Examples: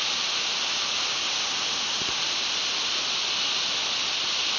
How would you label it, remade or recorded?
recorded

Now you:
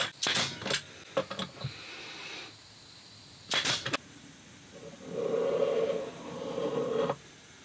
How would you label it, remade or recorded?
recorded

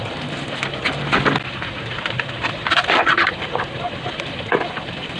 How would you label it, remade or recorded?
recorded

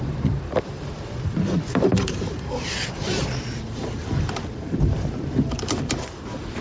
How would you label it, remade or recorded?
remade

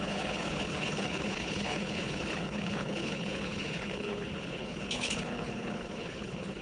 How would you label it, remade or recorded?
remade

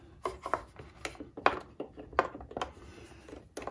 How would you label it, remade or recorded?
recorded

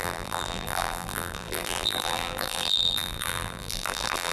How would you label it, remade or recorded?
remade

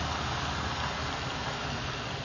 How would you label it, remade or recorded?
recorded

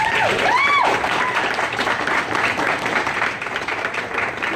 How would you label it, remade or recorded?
remade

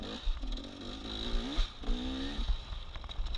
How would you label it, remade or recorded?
recorded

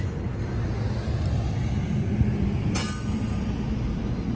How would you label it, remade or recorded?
recorded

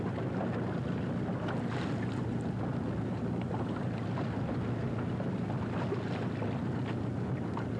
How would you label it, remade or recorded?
recorded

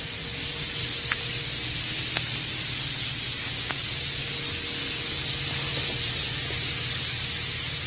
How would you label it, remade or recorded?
recorded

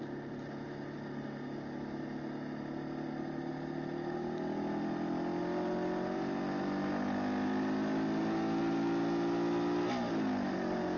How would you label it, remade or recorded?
recorded